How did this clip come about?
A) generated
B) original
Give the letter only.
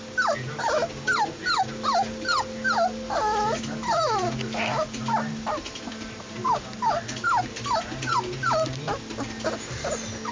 B